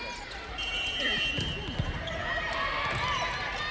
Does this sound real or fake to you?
real